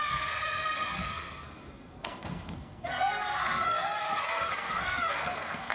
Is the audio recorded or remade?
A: remade